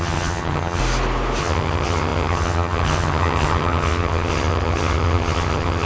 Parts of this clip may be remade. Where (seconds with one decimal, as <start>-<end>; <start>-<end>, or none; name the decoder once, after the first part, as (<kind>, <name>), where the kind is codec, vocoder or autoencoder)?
0.0-0.8 (vocoder, HiFi-GAN); 1.4-5.8